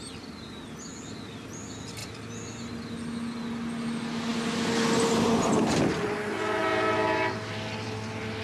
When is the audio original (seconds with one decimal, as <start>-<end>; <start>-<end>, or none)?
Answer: 0.0-8.4